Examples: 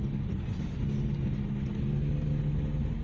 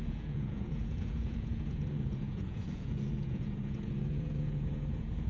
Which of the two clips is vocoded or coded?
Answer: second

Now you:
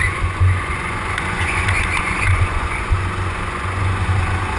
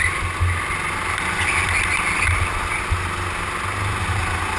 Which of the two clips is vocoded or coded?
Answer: first